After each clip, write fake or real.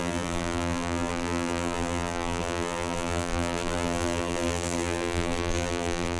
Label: fake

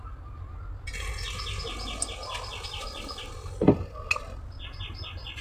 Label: real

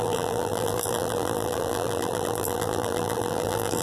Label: fake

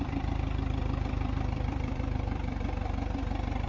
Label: fake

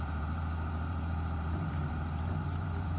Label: fake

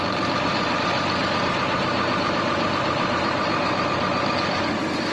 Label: fake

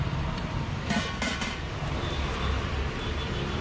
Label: fake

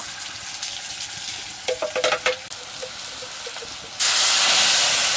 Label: real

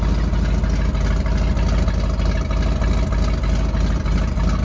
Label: real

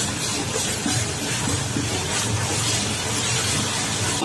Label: fake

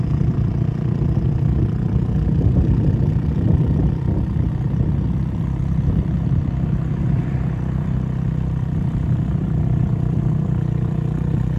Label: fake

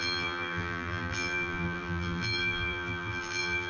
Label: fake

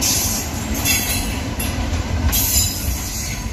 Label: fake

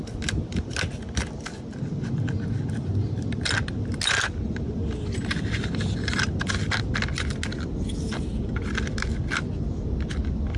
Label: real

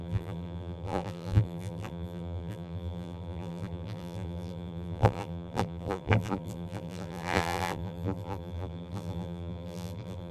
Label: fake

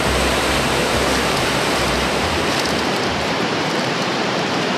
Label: fake